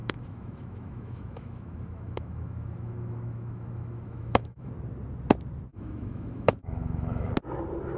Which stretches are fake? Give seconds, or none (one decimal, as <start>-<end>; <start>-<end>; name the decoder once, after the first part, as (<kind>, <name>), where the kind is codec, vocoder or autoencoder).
0.0-4.7 (autoencoder, DAC-VAE); 5.7-7.3